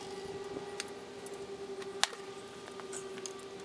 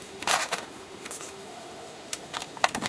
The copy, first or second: second